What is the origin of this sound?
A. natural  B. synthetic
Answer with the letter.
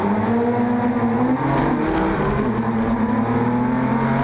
A